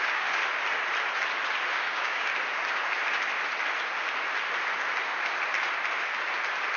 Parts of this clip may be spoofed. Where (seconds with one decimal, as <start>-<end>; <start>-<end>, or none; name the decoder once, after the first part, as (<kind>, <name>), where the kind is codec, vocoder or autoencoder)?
0.0-0.4 (codec, DAC); 1.7-2.3